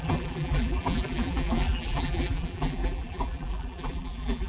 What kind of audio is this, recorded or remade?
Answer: remade